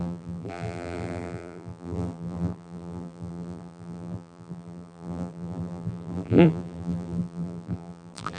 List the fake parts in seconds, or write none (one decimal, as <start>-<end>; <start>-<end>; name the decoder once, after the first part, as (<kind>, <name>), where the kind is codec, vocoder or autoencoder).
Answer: 0.0-8.4 (vocoder, BigVGAN v2)